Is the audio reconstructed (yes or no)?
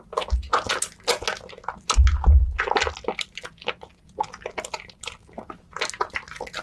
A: no